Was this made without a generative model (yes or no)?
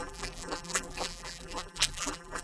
no